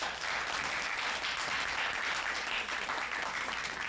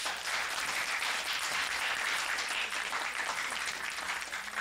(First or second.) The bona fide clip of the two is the first